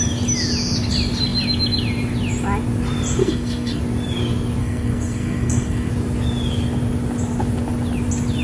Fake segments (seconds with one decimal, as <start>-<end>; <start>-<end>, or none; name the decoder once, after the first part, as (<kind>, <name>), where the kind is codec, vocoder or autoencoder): 3.2-3.8 (codec, SNAC); 4.6-5.9